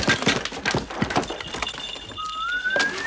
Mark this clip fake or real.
real